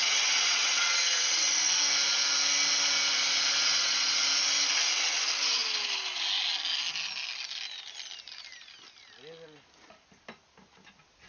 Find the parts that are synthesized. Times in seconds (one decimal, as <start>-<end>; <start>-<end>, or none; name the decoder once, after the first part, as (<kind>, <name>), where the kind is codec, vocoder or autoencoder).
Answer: 0.0-1.7 (vocoder, WaveNeXt); 3.6-4.2